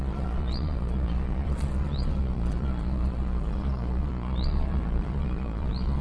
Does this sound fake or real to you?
fake